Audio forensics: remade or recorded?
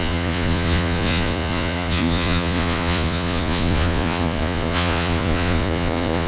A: remade